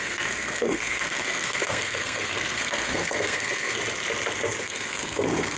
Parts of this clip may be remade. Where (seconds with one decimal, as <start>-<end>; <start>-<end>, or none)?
0.0-3.8; 4.6-5.6